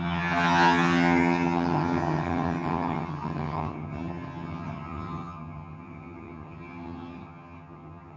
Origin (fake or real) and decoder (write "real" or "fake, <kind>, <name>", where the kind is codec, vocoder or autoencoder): fake, vocoder, HiFi-GAN